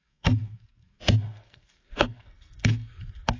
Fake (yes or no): yes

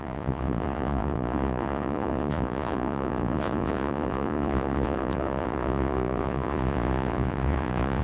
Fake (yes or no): yes